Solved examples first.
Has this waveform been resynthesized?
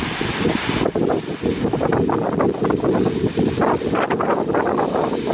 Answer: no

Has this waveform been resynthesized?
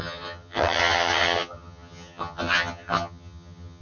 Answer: yes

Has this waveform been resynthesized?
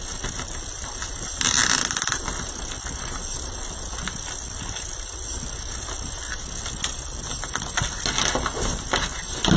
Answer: no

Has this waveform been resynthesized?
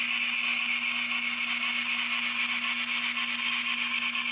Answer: no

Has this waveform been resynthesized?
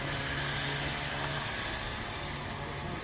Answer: no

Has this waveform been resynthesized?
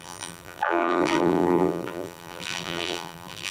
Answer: yes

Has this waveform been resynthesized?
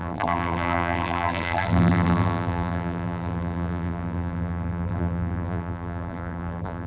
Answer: yes